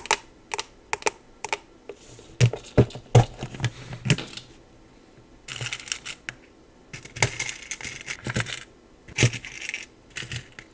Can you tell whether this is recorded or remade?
recorded